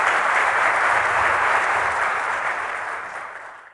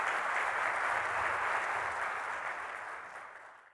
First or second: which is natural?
second